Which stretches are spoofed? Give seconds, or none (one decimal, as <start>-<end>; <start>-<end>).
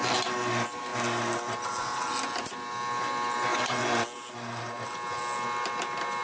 none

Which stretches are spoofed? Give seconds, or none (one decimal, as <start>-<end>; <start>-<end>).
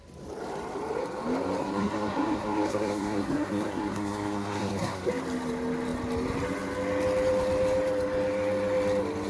1.6-5.1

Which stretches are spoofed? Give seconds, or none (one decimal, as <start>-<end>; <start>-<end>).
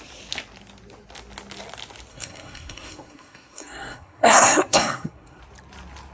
2.1-5.4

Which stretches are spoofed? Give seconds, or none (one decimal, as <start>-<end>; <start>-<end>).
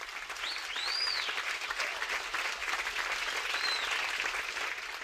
none